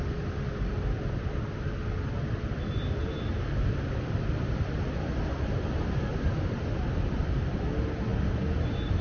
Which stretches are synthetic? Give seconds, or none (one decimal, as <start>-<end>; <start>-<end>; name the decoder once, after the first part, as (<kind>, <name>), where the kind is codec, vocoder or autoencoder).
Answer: 6.1-7.6 (vocoder, BigVGAN v2); 8.1-9.0